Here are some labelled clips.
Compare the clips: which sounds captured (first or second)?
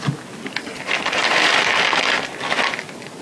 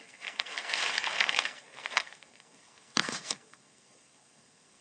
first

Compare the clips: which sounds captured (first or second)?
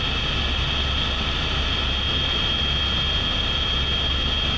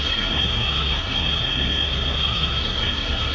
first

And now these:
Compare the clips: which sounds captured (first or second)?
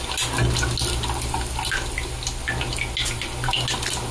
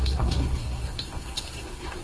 first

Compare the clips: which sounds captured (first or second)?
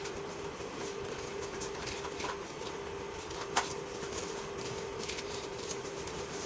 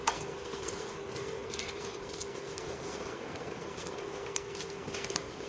first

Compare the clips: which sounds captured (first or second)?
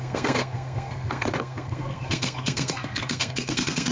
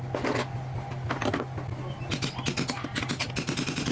second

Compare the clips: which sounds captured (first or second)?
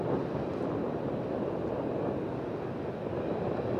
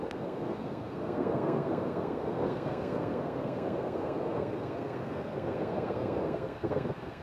first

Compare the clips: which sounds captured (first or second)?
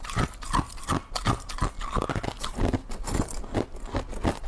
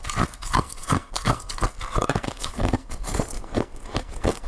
first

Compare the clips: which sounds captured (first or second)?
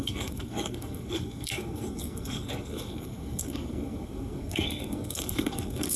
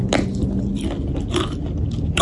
second